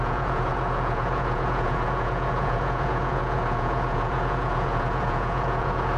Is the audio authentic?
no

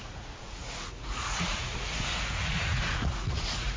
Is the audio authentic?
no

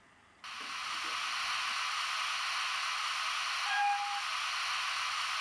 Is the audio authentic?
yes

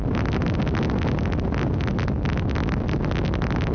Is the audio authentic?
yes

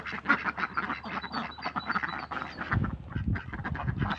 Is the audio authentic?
yes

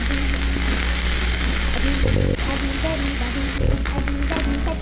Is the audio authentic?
yes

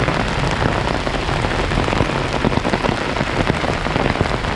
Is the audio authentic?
yes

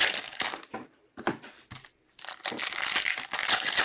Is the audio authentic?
yes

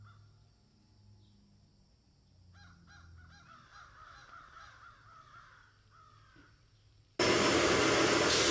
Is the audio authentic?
yes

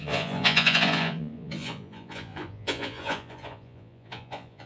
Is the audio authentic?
no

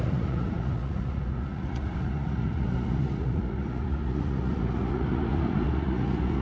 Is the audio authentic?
no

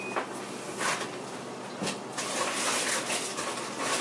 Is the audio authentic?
yes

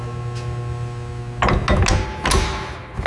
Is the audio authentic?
yes